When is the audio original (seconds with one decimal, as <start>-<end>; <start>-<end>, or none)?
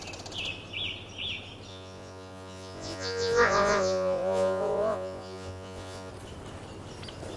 0.0-1.7; 6.1-7.4